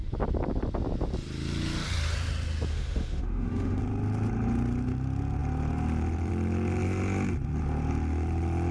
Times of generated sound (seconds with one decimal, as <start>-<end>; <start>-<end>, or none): 2.7-3.8